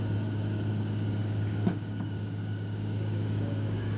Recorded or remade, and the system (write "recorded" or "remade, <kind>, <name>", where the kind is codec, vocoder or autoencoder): remade, codec, DAC